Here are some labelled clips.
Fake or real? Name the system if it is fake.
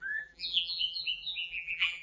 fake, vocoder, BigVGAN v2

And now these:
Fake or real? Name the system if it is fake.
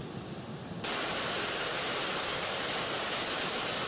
real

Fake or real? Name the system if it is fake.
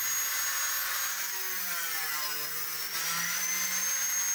real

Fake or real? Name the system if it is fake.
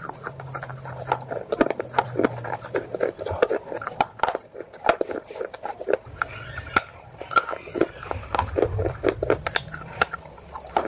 fake, vocoder, BigVGAN v2